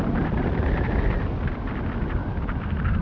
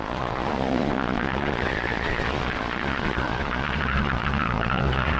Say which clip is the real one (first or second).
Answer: first